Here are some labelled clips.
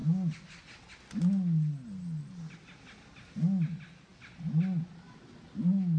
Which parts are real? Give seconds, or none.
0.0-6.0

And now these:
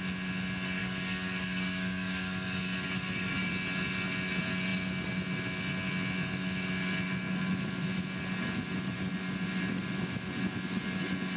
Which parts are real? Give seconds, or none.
0.0-0.8; 3.5-11.4

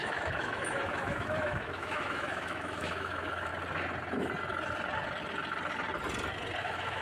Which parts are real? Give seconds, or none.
3.5-6.6

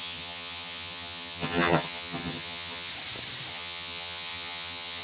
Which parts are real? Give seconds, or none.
2.9-3.5

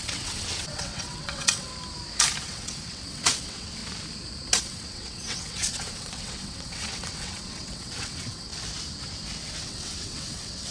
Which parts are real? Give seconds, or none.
1.7-2.4; 3.8-4.6; 8.5-9.5

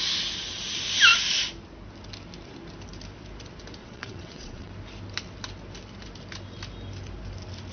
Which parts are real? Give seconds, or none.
0.0-3.8; 4.7-7.7

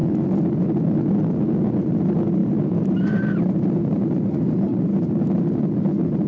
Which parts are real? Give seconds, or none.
0.0-2.4; 5.1-6.3